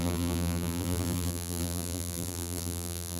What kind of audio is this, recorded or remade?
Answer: remade